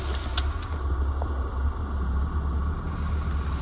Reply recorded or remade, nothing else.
recorded